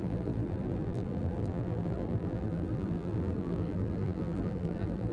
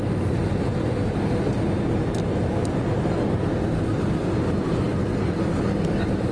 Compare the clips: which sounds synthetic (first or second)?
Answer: first